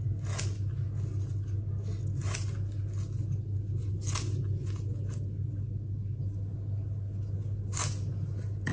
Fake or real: real